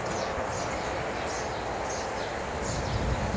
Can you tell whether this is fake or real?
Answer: real